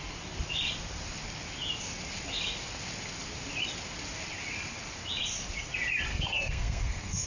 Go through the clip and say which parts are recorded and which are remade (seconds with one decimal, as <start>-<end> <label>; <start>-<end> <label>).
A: 0.0-6.1 recorded; 6.1-7.3 remade